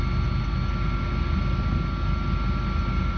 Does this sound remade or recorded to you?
recorded